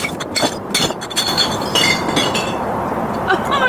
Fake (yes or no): yes